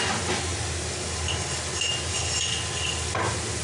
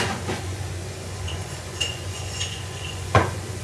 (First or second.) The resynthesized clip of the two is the second